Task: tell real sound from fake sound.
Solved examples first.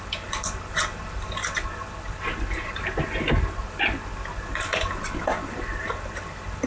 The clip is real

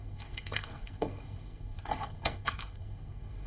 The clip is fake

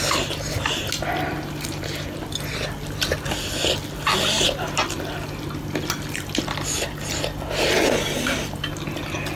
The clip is real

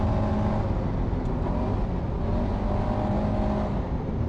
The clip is real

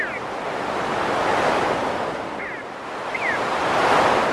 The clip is real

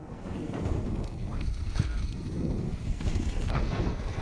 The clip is fake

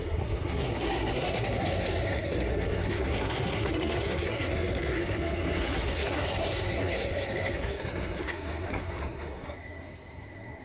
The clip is fake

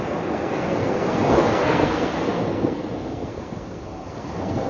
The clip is fake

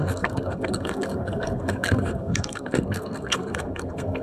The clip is fake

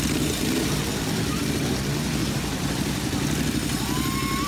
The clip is real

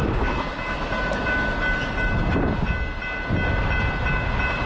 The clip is real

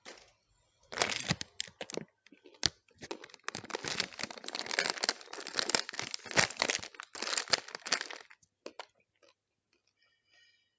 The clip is real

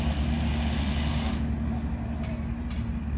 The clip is real